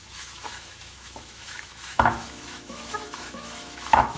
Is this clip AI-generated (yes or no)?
yes